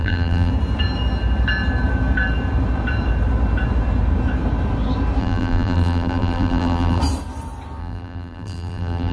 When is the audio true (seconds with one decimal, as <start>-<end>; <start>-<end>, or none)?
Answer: 0.5-5.2; 7.0-7.8